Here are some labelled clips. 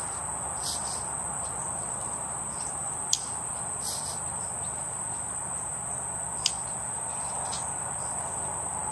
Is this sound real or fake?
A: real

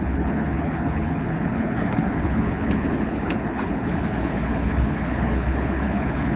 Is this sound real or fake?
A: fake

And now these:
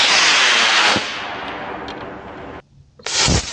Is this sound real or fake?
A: real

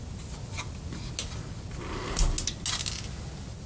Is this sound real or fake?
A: real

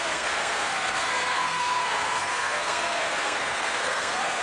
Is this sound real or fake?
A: fake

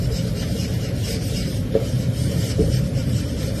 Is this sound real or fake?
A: fake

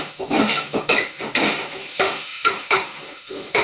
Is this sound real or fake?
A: fake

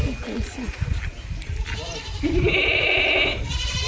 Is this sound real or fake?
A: real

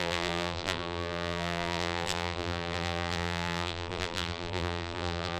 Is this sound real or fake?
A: fake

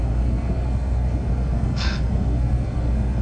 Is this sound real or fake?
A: fake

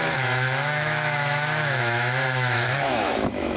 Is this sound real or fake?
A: fake